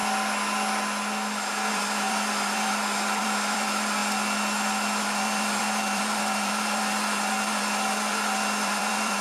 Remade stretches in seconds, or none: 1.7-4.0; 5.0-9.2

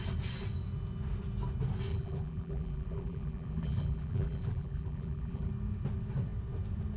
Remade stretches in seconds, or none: 1.9-5.5

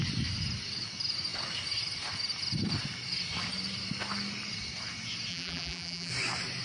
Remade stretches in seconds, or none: 5.3-6.1

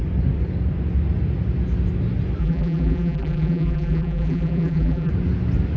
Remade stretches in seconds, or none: 2.4-5.1